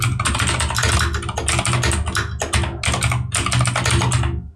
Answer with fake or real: real